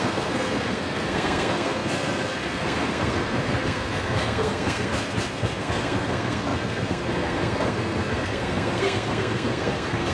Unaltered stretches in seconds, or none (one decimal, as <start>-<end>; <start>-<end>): none